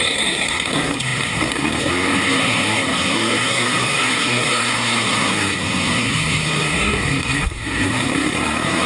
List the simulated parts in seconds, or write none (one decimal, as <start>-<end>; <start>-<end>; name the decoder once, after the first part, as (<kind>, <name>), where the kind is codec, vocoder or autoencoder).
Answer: 0.0-8.9 (codec, SNAC)